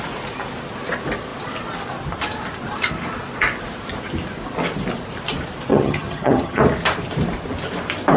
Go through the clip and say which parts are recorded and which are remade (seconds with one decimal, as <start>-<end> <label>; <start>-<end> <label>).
0.0-5.7 recorded; 5.7-6.6 remade; 6.6-8.2 recorded